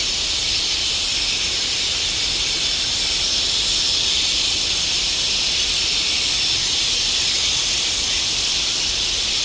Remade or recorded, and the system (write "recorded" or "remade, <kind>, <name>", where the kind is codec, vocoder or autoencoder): recorded